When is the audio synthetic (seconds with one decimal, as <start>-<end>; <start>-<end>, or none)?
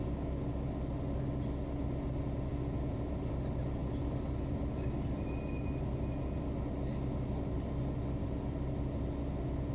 none